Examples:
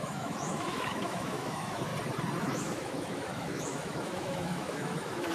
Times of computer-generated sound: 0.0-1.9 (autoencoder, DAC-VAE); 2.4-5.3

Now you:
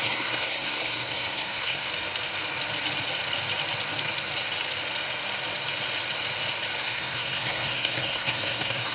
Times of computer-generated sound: 0.0-1.9 (codec, SNAC); 6.8-8.9